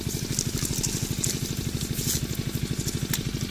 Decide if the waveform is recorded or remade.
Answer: recorded